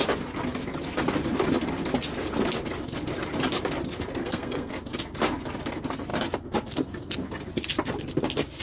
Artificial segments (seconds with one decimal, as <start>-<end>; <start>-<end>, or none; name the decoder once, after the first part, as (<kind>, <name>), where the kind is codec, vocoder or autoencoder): 4.2-4.7 (codec, SNAC)